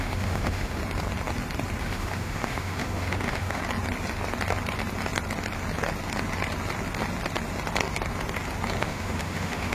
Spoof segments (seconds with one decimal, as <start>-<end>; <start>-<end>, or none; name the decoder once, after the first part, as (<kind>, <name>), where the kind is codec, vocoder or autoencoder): 0.0-0.8 (autoencoder, DAC-VAE); 1.8-3.6; 8.8-9.7